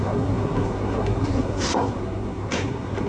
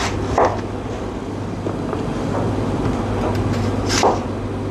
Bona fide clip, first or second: second